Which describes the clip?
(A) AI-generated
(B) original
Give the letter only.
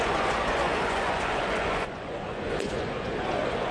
A